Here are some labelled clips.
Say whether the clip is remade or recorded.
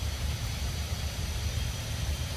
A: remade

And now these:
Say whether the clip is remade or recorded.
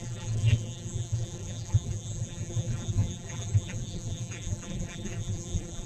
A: remade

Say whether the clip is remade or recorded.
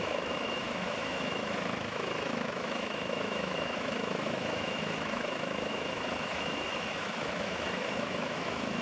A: remade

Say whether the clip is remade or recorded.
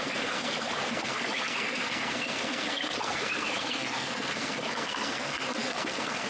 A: remade